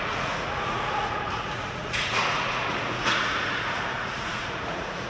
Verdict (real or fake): fake